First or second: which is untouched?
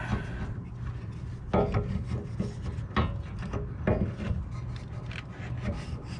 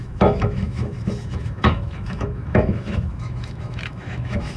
first